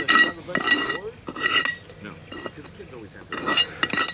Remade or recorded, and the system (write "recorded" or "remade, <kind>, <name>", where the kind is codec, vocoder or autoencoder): recorded